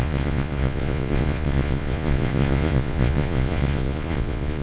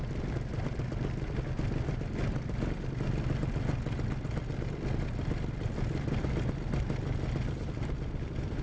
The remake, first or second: first